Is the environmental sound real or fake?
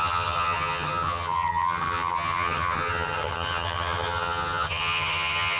fake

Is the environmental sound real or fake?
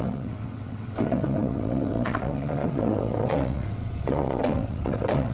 fake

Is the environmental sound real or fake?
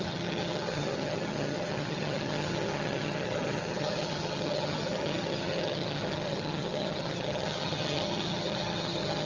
fake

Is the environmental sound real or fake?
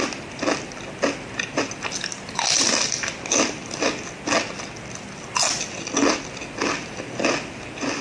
real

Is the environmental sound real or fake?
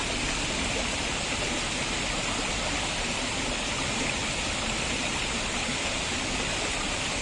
real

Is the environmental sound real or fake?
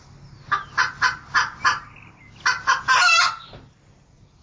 real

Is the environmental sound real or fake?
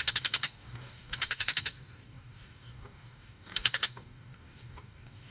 fake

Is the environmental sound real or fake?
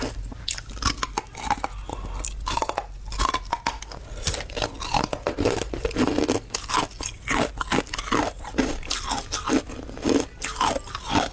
real